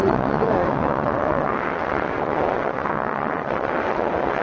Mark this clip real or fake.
fake